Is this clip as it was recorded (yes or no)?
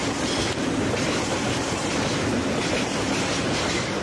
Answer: yes